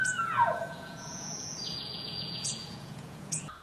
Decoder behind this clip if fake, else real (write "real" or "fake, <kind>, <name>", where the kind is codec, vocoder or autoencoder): fake, vocoder, Vocos